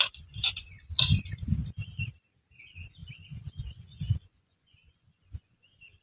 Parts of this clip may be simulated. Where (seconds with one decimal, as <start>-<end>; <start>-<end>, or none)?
0.0-1.6; 2.6-6.0